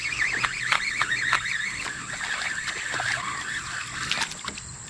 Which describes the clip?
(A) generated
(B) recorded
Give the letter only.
B